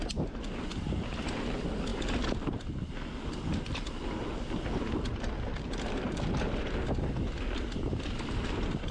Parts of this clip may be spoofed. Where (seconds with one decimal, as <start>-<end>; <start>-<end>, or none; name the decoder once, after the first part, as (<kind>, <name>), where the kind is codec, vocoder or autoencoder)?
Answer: none